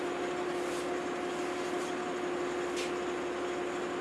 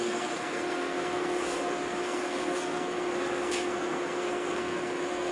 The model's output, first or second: second